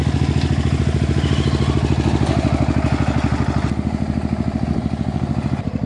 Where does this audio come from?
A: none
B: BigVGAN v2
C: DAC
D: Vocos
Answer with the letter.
A